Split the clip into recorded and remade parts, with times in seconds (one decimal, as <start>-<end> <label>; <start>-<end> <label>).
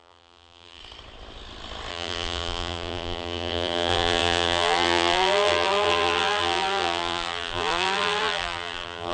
0.0-0.8 remade; 0.8-1.9 recorded; 1.9-9.1 remade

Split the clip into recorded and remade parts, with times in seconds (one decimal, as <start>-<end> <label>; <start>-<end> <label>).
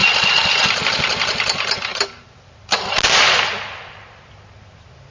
0.0-0.8 remade; 0.8-1.9 recorded; 1.9-2.5 remade; 2.5-5.1 recorded